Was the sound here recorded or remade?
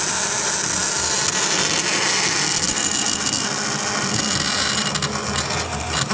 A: recorded